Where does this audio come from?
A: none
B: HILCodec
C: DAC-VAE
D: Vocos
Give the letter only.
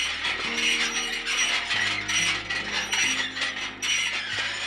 A